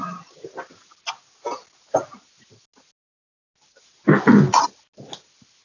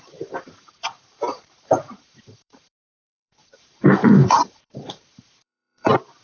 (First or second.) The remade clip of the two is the second